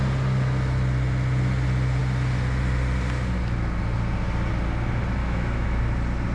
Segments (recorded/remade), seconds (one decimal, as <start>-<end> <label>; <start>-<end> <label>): 0.0-5.2 recorded; 5.2-5.8 remade; 5.8-6.3 recorded